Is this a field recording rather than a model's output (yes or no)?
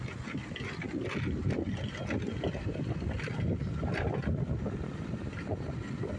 yes